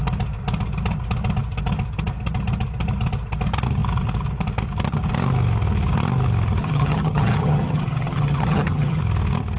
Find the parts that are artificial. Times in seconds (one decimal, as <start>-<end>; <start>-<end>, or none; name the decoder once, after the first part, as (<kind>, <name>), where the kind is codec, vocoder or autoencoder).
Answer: 6.6-9.0 (vocoder, HiFi-GAN)